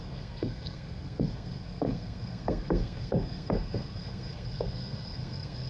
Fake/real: fake